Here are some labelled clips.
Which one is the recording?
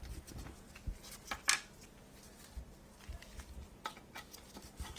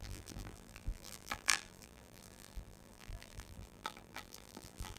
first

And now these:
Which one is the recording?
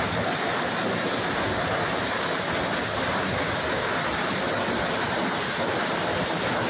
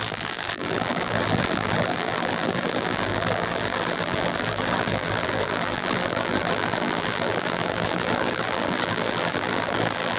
first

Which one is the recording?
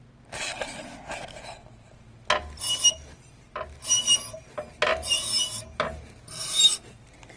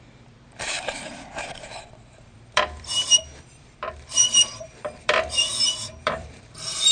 first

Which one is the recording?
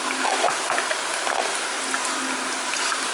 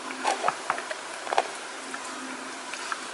first